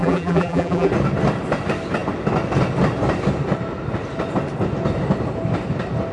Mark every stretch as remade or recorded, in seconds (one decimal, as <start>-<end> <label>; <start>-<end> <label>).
0.0-0.9 remade; 0.9-6.1 recorded